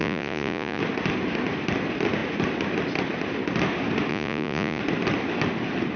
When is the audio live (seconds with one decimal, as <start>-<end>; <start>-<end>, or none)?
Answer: 0.8-4.1; 4.8-6.0